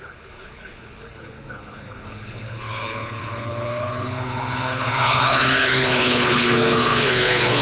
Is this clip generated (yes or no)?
yes